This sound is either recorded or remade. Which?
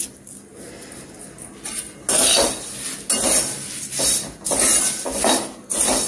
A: recorded